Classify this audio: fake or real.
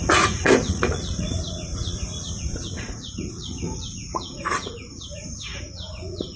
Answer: fake